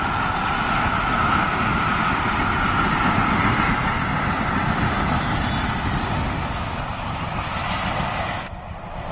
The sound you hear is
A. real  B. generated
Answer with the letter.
A